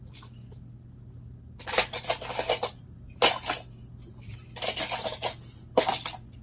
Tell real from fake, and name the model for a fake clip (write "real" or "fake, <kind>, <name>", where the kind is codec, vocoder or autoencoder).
real